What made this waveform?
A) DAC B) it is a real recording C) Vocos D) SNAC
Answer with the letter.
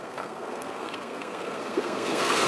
D